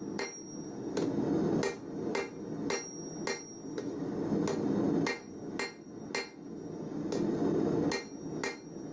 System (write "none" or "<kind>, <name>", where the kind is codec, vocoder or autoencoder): none